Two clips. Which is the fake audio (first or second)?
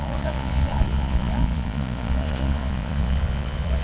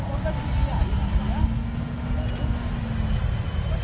first